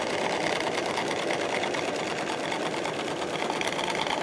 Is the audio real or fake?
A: real